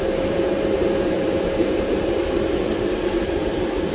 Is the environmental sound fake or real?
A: fake